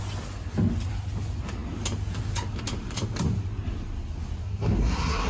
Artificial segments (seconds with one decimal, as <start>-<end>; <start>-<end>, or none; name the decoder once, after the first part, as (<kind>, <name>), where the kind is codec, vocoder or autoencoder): 4.4-5.3 (codec, SNAC)